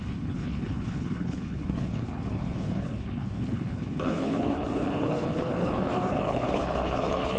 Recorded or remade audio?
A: remade